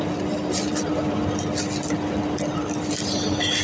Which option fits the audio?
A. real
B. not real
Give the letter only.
A